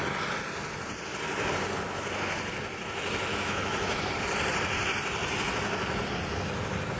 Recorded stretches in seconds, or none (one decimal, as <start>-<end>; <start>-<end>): 0.0-3.3; 4.0-7.0